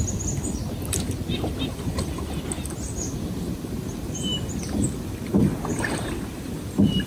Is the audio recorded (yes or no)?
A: yes